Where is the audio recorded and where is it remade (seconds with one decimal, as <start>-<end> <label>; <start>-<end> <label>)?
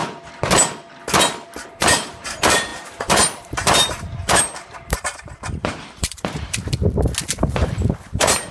0.0-1.7 recorded; 1.7-6.8 remade; 6.8-7.4 recorded; 7.4-8.5 remade